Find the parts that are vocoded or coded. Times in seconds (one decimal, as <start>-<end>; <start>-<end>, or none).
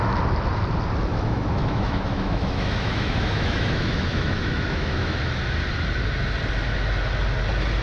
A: 1.1-5.4